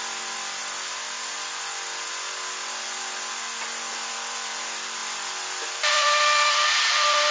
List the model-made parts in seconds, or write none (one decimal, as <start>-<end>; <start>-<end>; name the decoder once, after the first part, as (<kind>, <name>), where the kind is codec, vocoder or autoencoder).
0.0-0.6 (vocoder, BigVGAN v2); 3.9-7.3